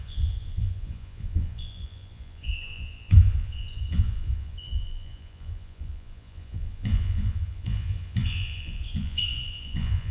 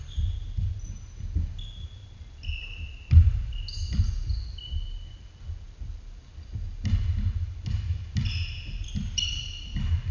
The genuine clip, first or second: second